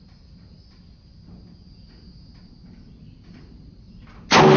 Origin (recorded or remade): recorded